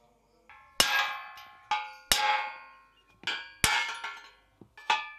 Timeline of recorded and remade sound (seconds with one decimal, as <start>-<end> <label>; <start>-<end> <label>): 0.0-5.2 recorded